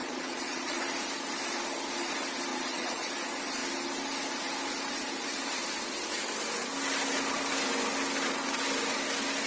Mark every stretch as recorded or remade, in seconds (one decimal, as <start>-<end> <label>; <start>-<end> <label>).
0.0-0.8 remade; 0.8-2.5 recorded; 2.5-3.1 remade; 3.1-9.5 recorded